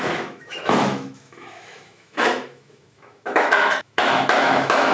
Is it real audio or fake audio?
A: fake